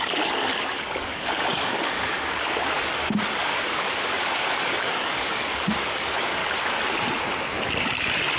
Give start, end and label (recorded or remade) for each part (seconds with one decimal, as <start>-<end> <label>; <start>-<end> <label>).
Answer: 0.0-6.4 remade; 6.4-8.4 recorded